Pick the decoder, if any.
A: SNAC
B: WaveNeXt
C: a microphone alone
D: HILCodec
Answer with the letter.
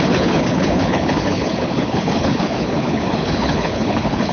D